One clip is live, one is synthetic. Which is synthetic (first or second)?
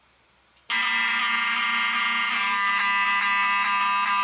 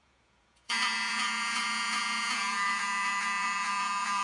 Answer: second